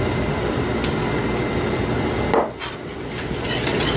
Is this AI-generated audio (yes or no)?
no